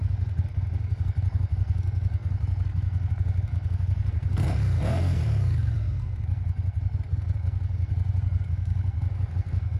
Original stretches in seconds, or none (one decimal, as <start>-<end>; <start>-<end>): none